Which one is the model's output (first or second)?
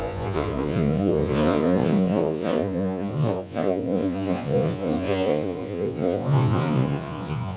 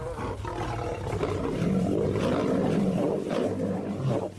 first